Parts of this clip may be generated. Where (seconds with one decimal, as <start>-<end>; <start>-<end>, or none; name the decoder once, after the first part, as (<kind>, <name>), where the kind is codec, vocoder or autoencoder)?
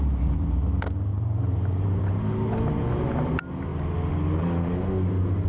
1.1-2.2 (vocoder, BigVGAN v2)